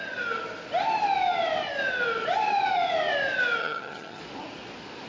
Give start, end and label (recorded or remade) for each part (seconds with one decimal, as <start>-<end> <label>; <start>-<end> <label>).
0.0-3.6 recorded; 3.6-4.2 remade; 4.2-5.1 recorded